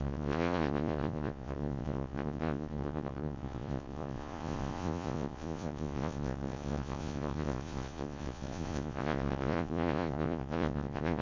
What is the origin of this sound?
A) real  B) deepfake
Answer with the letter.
B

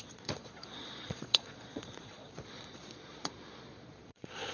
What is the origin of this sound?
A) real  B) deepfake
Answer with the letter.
B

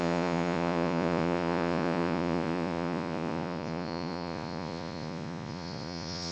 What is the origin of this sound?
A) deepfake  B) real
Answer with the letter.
A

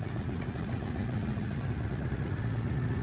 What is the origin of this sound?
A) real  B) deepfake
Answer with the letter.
B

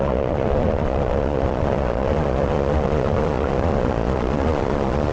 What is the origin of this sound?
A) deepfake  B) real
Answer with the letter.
A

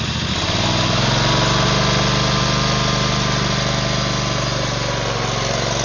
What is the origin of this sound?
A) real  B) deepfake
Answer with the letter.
A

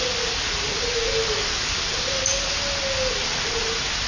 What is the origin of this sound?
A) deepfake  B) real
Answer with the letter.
B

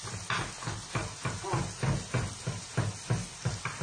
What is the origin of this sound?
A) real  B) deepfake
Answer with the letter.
A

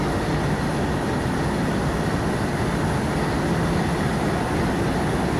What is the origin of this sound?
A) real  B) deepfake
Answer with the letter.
A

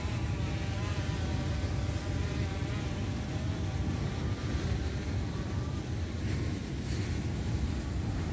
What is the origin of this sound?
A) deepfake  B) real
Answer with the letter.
B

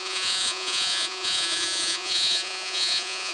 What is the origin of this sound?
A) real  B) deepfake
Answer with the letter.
B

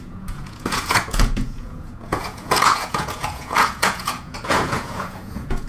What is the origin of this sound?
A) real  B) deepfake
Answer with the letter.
B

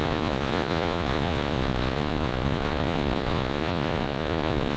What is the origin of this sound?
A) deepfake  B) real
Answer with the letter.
A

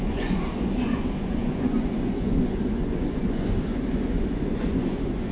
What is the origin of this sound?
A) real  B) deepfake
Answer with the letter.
B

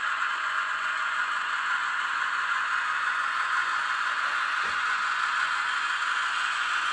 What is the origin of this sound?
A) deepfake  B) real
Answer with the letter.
A